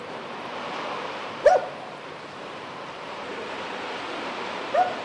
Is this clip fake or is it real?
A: fake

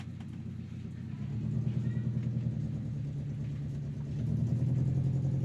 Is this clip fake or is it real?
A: real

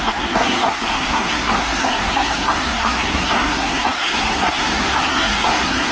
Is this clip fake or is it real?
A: fake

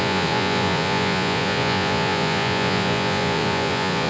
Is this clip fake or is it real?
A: fake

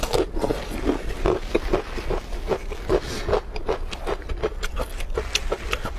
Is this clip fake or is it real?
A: real